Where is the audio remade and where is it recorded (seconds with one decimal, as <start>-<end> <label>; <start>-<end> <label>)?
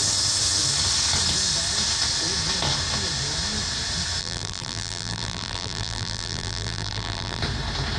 0.0-4.2 recorded; 4.2-7.4 remade; 7.4-8.0 recorded